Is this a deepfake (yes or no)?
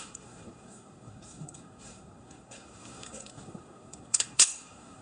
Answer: yes